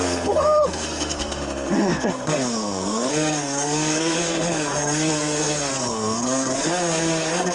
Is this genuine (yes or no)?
no